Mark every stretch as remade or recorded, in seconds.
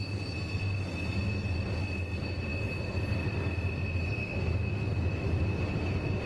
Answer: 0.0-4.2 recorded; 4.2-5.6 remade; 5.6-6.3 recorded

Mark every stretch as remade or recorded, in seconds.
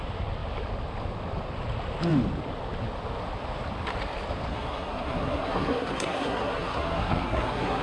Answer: 0.0-4.5 recorded; 4.5-7.8 remade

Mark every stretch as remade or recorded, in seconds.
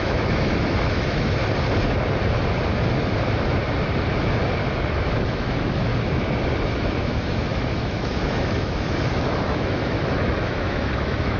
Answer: 0.0-1.4 remade; 1.4-4.9 recorded; 4.9-5.9 remade; 5.9-6.7 recorded; 6.7-11.4 remade